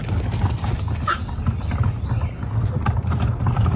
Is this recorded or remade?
recorded